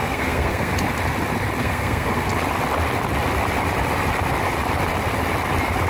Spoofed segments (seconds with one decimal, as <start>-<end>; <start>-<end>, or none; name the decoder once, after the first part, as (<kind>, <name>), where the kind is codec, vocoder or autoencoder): 0.0-0.7 (codec, SNAC); 1.6-2.3